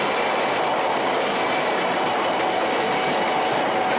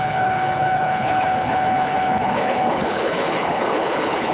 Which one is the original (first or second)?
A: first